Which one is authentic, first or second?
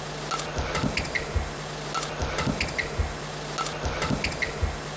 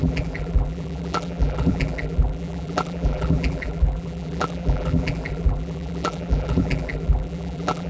first